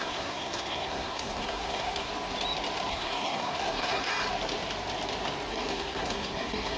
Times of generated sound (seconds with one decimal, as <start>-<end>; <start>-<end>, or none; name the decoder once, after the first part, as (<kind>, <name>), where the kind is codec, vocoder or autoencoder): 0.0-2.1 (codec, SNAC); 2.9-4.1; 5.5-6.8